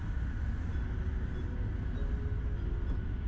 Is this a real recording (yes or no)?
yes